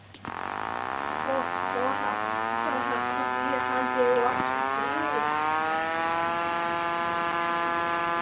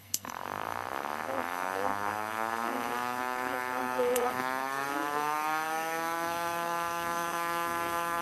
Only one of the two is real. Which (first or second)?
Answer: first